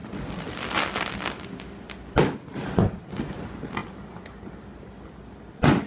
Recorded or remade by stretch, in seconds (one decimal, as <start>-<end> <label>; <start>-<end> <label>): 0.0-5.9 recorded